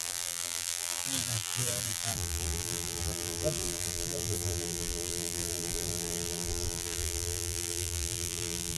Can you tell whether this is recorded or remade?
remade